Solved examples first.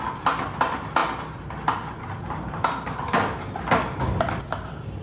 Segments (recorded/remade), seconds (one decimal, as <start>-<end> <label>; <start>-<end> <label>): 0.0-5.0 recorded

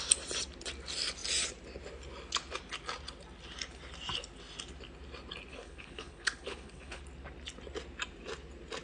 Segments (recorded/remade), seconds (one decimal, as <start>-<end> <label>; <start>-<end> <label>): 0.0-5.5 recorded; 5.5-7.0 remade; 7.0-8.8 recorded

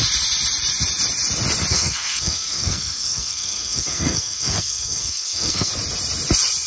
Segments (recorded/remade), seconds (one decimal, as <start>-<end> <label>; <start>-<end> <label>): 0.0-1.7 recorded; 1.7-5.7 remade; 5.7-6.7 recorded